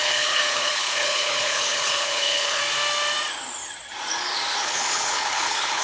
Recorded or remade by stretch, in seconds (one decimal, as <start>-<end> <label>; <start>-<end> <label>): 0.0-2.6 remade; 2.6-4.6 recorded; 4.6-5.8 remade